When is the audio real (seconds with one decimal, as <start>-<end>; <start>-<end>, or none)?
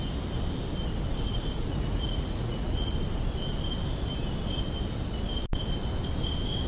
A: 0.0-1.7; 2.9-6.7